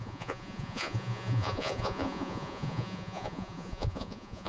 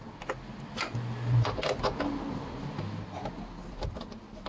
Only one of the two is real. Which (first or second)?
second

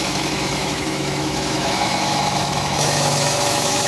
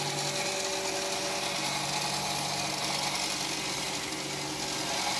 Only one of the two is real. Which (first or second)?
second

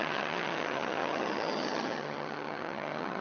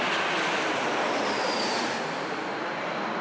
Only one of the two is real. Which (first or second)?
second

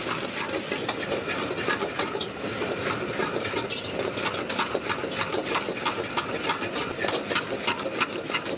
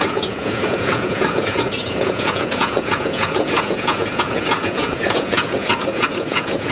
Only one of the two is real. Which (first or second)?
first